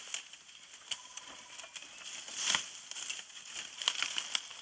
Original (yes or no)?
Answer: yes